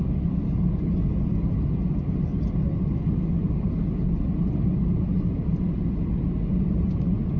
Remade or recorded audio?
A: recorded